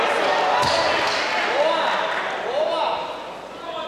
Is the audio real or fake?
real